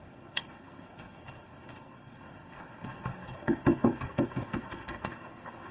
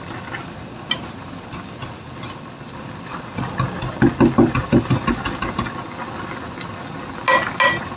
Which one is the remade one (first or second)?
first